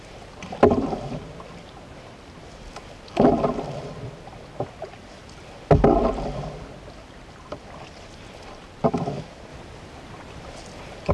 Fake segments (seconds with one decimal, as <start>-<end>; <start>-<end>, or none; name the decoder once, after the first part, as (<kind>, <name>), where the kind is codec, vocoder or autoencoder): 9.5-11.1 (vocoder, BigVGAN v2)